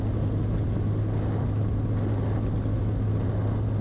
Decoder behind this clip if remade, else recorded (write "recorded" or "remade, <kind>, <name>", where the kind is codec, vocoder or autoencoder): recorded